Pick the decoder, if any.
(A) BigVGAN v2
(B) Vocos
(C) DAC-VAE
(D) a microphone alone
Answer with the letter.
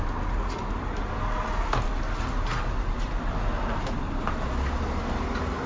D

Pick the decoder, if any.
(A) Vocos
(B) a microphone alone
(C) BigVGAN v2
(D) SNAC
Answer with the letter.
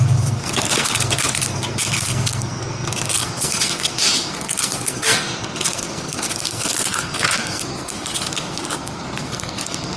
D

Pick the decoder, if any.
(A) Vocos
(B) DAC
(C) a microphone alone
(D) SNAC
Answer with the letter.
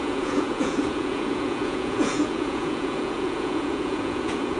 A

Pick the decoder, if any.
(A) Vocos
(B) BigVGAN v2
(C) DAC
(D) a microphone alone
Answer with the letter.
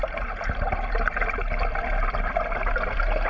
D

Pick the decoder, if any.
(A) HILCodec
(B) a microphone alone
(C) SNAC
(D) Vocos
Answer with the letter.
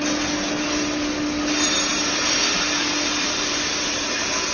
B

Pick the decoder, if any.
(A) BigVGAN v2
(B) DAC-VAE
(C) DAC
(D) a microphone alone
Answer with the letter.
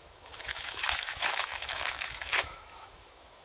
B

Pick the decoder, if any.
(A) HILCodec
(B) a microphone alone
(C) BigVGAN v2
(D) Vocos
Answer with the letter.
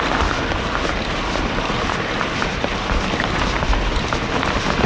B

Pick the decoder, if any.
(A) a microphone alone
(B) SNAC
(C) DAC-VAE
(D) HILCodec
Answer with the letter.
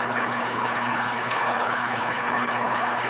D